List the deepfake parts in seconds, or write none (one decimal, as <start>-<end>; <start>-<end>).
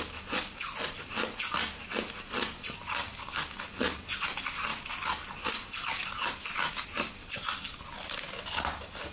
none